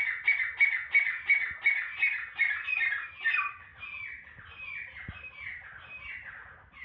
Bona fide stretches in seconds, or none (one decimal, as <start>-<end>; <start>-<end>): 0.0-6.8